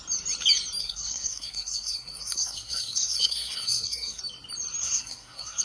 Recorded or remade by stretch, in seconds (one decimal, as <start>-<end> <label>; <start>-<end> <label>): 0.0-0.8 recorded; 0.8-4.2 remade; 4.2-4.8 recorded; 4.8-5.6 remade